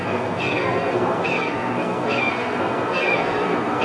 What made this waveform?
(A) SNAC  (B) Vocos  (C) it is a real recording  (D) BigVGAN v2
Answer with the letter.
A